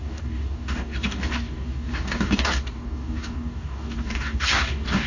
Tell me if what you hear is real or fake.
fake